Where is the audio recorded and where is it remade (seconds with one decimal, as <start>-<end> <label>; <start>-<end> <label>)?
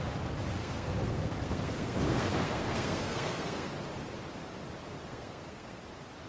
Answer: 0.0-0.6 recorded; 0.6-3.7 remade; 3.7-5.1 recorded; 5.1-5.8 remade; 5.8-6.3 recorded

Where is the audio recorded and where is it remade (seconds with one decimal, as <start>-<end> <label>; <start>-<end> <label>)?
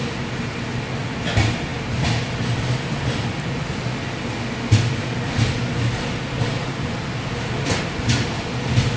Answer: 0.0-9.0 recorded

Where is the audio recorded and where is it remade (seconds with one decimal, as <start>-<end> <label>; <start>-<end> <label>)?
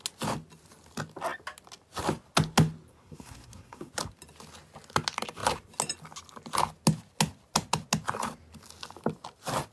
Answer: 0.0-2.9 recorded; 2.9-3.9 remade; 3.9-9.7 recorded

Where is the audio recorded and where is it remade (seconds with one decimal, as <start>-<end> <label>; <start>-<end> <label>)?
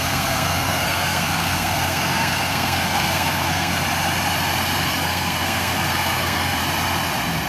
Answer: 0.0-3.7 remade; 3.7-4.8 recorded; 4.8-6.6 remade; 6.6-7.5 recorded